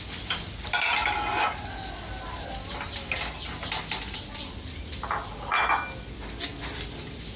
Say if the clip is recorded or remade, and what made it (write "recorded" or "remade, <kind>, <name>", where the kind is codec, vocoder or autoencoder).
recorded